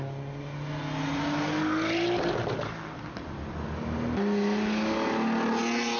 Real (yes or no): yes